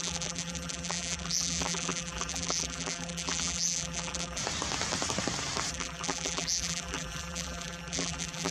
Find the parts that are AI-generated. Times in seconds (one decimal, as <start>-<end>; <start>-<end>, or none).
0.0-4.4; 5.7-8.5